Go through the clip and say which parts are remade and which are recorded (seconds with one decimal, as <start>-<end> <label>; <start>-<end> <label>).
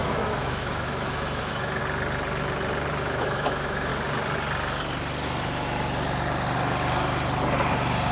0.0-1.8 remade; 1.8-2.9 recorded; 2.9-3.9 remade; 3.9-8.1 recorded